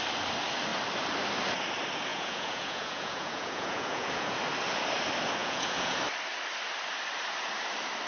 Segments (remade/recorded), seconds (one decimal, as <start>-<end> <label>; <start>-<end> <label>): 0.0-2.1 recorded; 2.1-4.4 remade; 4.4-5.4 recorded; 5.4-6.0 remade; 6.0-8.1 recorded